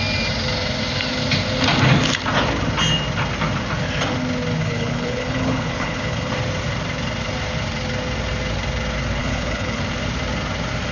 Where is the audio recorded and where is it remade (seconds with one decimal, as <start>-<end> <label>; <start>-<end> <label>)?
0.0-4.6 recorded; 4.6-6.3 remade; 6.3-9.2 recorded; 9.2-9.8 remade; 9.8-10.9 recorded